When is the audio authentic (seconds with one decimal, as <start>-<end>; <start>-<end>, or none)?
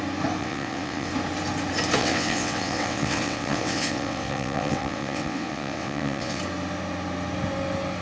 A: 0.0-0.4; 1.1-2.0; 6.4-8.0